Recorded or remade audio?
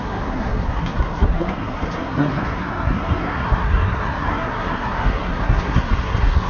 remade